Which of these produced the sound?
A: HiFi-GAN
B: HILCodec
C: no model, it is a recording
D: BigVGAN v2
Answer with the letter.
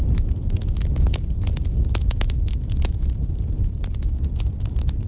C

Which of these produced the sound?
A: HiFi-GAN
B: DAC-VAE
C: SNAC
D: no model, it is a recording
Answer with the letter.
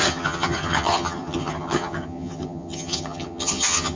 A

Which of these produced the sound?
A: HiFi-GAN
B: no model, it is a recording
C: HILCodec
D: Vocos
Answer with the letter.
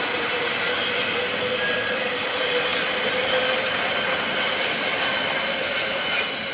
B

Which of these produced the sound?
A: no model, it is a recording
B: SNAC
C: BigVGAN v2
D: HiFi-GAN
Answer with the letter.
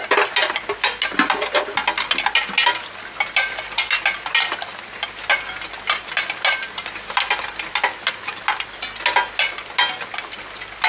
A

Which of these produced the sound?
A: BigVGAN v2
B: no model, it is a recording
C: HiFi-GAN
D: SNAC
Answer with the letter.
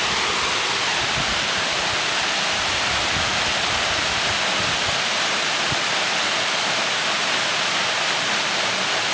B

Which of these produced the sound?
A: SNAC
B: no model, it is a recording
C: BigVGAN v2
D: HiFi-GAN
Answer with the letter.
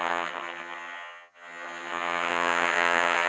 D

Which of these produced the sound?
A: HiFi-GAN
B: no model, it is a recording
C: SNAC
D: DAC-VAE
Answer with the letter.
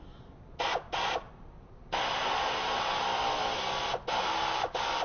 B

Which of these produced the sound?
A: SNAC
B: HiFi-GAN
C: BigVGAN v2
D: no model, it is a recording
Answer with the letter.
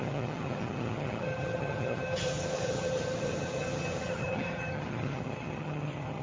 B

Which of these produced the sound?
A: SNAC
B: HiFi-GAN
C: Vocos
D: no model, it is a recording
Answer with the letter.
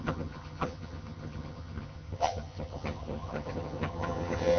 B